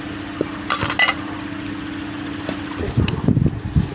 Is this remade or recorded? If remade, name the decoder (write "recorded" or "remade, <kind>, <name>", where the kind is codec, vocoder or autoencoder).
recorded